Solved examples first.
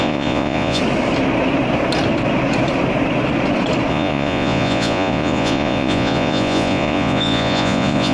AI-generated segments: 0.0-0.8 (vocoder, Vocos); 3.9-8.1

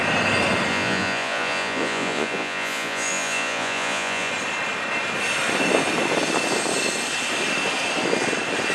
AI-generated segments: 0.7-4.3 (vocoder, Vocos)

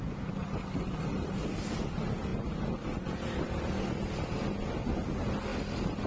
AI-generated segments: none

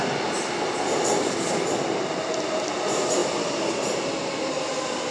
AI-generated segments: none

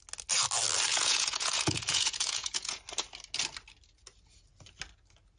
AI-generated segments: 0.9-2.8 (vocoder, Vocos)

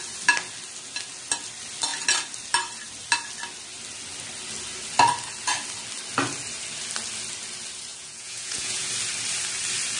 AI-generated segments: 7.9-8.9 (vocoder, Vocos)